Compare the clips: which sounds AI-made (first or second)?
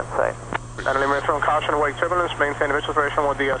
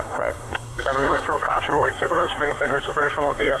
second